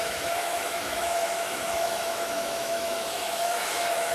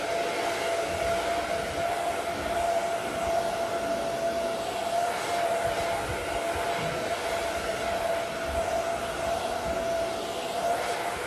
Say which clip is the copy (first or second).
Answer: first